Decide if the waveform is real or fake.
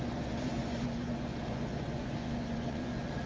fake